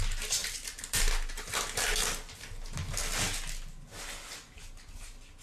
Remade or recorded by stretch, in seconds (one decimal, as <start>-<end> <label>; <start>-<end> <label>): 0.0-0.4 recorded; 0.4-1.0 remade; 1.0-5.4 recorded